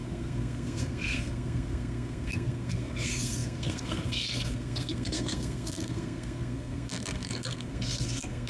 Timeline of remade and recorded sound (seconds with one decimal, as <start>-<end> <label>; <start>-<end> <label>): 0.0-8.5 remade